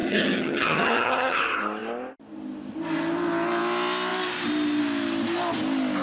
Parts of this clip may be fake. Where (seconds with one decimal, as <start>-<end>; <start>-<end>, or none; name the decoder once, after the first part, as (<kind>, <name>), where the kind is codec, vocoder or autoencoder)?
0.0-1.4 (vocoder, HiFi-GAN)